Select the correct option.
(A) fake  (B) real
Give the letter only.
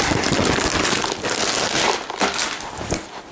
B